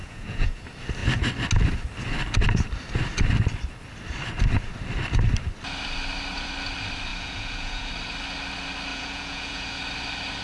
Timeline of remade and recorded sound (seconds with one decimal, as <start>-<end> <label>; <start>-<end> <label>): 0.0-0.6 remade; 0.6-7.1 recorded; 7.1-7.9 remade; 7.9-8.9 recorded; 8.9-9.8 remade; 9.8-10.4 recorded